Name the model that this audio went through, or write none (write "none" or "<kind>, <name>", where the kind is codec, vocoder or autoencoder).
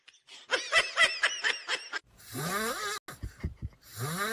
none